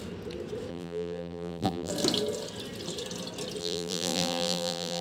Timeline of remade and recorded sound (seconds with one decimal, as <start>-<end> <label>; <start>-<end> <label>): 0.0-0.7 recorded; 0.7-1.9 remade; 1.9-3.6 recorded; 3.6-5.0 remade